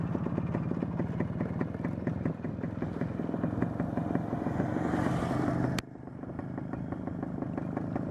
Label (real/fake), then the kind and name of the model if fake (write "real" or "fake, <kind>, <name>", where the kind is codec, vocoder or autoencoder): real